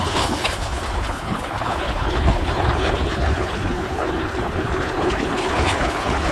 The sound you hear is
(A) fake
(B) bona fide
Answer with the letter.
A